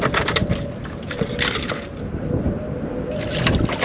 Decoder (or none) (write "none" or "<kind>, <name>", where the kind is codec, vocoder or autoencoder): none